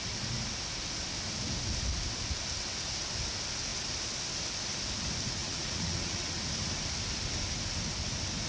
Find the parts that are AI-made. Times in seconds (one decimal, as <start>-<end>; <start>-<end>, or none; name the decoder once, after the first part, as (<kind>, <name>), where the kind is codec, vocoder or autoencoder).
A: 5.4-6.3 (vocoder, Vocos)